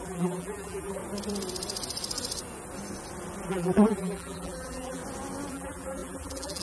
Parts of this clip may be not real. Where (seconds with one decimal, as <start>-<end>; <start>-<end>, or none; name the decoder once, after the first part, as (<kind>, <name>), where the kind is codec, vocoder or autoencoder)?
0.0-1.0 (vocoder, BigVGAN v2); 3.5-5.0; 5.5-6.6